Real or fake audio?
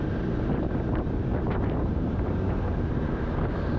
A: fake